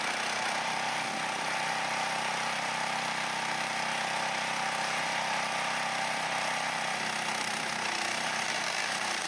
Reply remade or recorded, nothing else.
recorded